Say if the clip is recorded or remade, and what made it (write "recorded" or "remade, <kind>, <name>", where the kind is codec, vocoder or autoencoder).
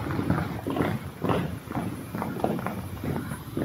recorded